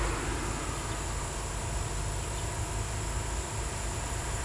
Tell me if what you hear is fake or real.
real